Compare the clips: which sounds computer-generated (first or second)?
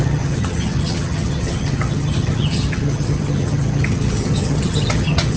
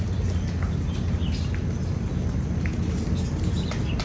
first